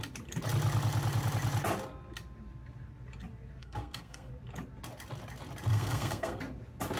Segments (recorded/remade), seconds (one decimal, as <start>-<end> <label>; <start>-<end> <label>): 0.0-3.6 recorded; 3.6-4.3 remade; 4.3-5.7 recorded; 5.7-6.4 remade; 6.4-7.0 recorded